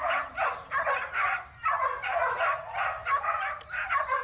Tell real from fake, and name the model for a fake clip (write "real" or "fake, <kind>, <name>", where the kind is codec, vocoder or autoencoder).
real